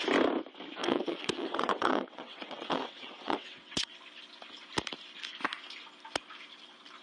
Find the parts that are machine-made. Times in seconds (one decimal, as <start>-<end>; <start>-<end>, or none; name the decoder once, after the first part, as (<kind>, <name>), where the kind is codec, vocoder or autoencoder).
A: 0.8-3.9 (vocoder, WaveNeXt)